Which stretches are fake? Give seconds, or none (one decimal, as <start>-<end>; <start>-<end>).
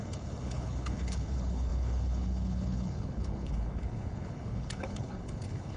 0.0-5.8